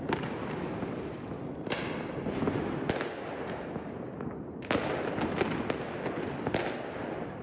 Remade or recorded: recorded